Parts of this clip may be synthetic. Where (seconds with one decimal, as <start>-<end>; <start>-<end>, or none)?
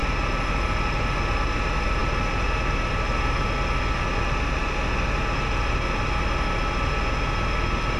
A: none